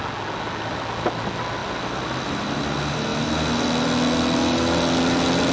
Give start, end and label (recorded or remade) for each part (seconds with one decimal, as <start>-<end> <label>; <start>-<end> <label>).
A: 0.0-5.5 recorded